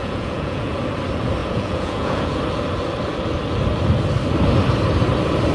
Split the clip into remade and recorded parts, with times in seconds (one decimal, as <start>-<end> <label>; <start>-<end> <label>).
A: 0.0-0.8 remade; 0.8-1.4 recorded; 1.4-2.4 remade; 2.4-5.5 recorded